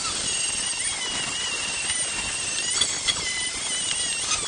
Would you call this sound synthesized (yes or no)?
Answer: no